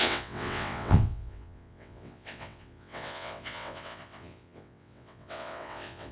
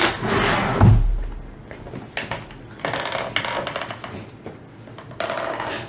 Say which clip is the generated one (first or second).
first